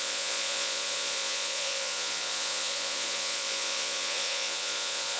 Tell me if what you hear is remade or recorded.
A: remade